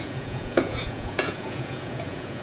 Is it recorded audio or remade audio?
remade